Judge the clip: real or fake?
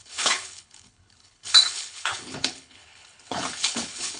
fake